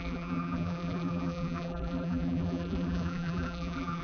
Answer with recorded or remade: remade